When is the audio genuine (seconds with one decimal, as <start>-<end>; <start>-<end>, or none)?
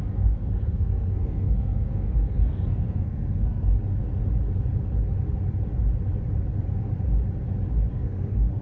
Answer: 3.7-7.9